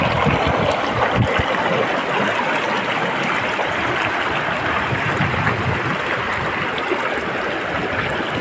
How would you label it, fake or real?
real